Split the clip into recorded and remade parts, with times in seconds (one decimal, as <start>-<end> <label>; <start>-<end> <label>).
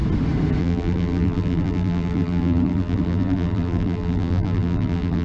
0.0-0.6 recorded; 0.6-5.2 remade